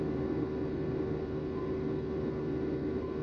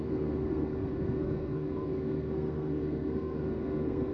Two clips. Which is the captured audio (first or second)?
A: first